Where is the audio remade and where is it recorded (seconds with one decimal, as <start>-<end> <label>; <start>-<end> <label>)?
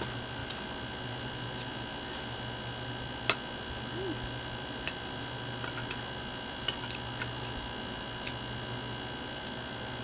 0.0-10.0 recorded